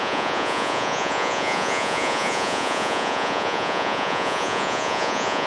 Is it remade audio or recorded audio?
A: remade